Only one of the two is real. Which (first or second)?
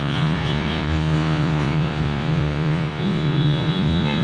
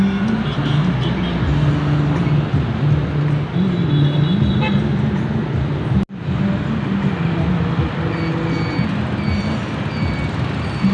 second